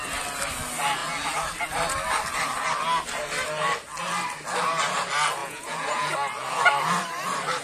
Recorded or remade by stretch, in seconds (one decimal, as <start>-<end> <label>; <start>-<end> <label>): 0.0-5.4 recorded; 5.4-6.1 remade; 6.1-7.6 recorded